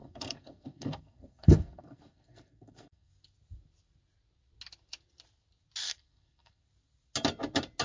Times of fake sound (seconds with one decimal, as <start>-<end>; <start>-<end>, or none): 0.0-3.1; 5.8-6.6